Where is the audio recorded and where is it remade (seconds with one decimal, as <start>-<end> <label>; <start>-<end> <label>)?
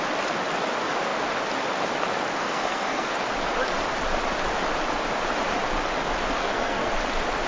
0.0-2.4 recorded; 2.4-3.1 remade; 3.1-6.4 recorded; 6.4-6.9 remade; 6.9-7.5 recorded